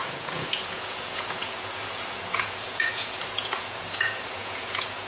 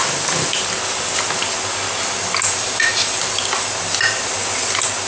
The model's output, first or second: first